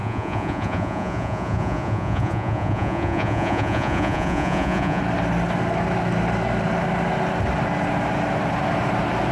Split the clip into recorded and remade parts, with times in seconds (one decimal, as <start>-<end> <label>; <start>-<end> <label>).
0.0-5.0 remade; 5.0-9.3 recorded